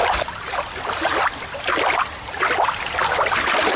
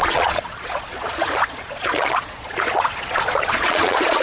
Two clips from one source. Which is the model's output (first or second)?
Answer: second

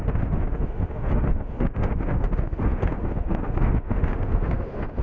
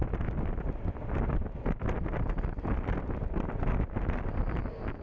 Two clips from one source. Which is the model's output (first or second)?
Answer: first